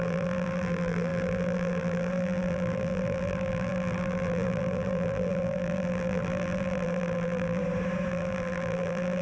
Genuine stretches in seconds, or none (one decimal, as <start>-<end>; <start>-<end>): 7.6-8.1